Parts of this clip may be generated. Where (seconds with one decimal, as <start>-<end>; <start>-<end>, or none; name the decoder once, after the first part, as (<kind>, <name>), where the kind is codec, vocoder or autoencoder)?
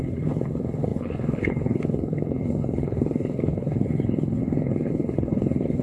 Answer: 0.0-5.8 (codec, HILCodec)